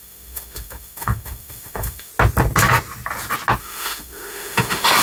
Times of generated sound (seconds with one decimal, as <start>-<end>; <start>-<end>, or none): 0.0-2.1; 3.6-5.0